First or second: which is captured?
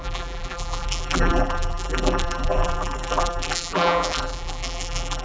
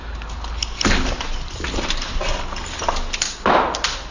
second